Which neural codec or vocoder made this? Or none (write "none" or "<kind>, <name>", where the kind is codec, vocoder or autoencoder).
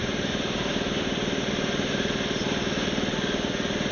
vocoder, BigVGAN v2